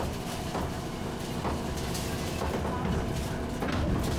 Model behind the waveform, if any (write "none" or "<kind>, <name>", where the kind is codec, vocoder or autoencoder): none